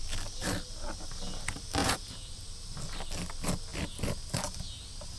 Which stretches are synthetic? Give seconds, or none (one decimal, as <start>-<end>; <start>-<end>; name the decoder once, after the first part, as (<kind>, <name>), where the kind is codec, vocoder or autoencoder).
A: 1.8-2.3 (vocoder, Vocos)